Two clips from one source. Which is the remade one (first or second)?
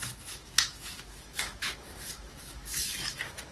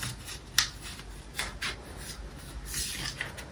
first